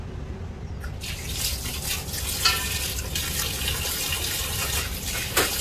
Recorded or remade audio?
recorded